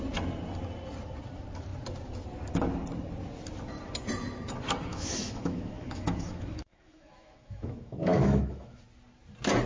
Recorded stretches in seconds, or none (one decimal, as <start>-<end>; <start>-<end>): 0.0-4.9; 8.8-9.7